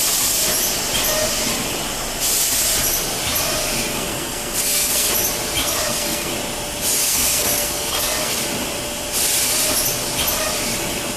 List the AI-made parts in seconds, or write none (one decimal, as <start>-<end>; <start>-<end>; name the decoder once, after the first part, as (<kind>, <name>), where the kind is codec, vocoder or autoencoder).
3.9-5.1 (codec, SNAC); 5.6-6.3; 7.0-8.4